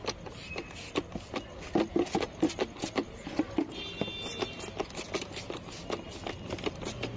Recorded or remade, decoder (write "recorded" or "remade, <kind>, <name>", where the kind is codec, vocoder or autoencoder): recorded